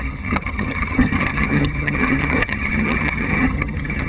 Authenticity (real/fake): fake